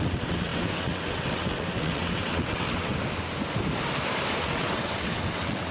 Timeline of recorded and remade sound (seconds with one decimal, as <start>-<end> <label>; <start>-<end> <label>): 0.0-2.9 remade; 2.9-4.4 recorded; 4.4-5.7 remade